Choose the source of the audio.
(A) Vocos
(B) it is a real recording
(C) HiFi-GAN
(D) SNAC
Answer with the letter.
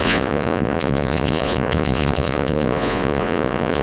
A